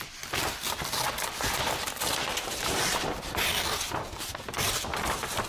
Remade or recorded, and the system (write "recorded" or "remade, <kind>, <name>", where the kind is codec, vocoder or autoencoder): remade, vocoder, BigVGAN v2